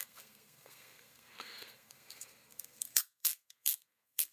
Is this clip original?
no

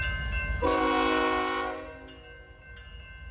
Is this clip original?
yes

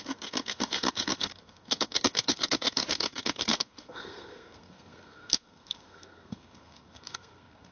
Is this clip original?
no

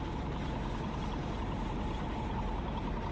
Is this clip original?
yes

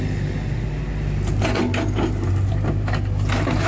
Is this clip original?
yes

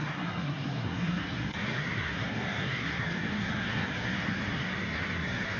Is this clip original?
no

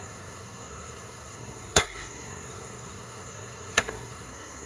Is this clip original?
no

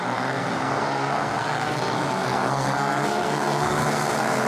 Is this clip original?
no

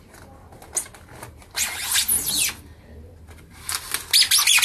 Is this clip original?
yes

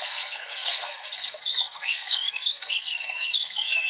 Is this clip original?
no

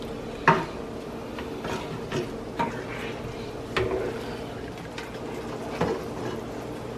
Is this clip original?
yes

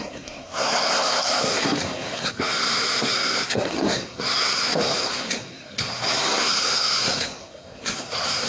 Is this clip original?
no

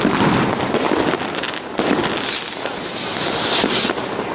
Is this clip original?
yes